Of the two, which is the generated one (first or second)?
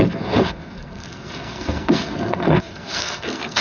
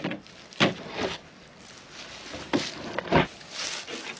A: first